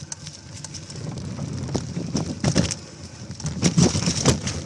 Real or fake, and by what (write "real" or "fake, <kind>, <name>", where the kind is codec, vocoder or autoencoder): real